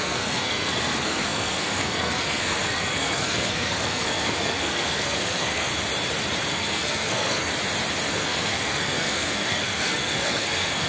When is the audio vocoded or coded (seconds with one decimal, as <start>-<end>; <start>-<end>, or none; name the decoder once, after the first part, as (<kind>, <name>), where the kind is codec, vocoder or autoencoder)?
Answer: 0.0-5.7 (codec, SNAC); 6.5-7.5; 8.1-10.9